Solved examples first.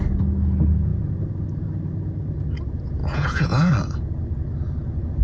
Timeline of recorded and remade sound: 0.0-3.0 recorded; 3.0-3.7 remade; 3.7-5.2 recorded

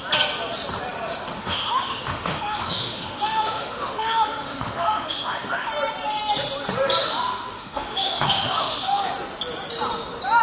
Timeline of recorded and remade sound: 0.0-1.4 recorded; 1.4-5.7 remade; 5.7-7.0 recorded; 7.0-9.1 remade; 9.1-10.4 recorded

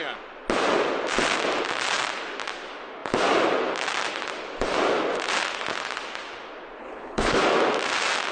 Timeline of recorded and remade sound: 0.0-6.8 recorded; 6.8-7.4 remade; 7.4-8.3 recorded

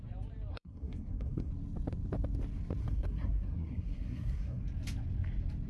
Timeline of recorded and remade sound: 0.0-0.5 recorded; 0.5-1.5 remade; 1.5-2.8 recorded; 2.8-4.6 remade; 4.6-5.7 recorded

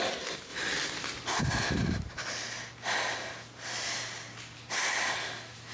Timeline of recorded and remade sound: 0.0-5.7 recorded

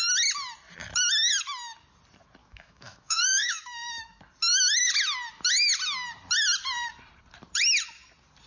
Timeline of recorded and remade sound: 0.0-2.4 recorded; 2.4-4.2 remade; 4.2-8.5 recorded

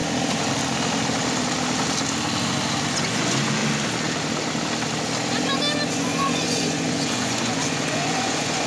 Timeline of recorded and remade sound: 0.0-2.9 recorded; 2.9-3.6 remade; 3.6-5.9 recorded; 5.9-8.7 remade

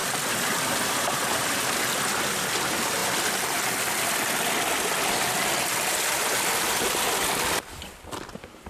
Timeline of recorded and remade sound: 0.0-3.0 remade; 3.0-7.3 recorded; 7.3-8.7 remade